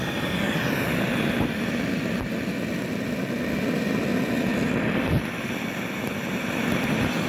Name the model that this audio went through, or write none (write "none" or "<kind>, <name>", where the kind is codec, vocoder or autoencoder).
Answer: none